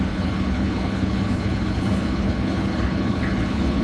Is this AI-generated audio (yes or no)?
yes